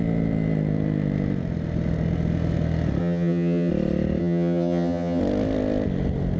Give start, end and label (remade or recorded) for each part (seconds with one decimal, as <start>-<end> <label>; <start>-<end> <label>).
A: 0.0-3.0 recorded; 3.0-3.7 remade; 3.7-4.2 recorded; 4.2-5.2 remade; 5.2-6.4 recorded